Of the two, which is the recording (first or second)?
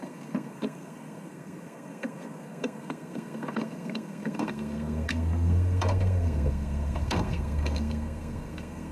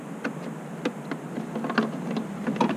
second